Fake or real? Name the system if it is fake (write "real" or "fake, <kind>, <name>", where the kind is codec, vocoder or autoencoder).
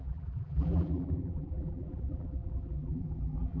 fake, vocoder, BigVGAN v2